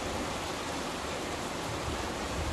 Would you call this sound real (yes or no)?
yes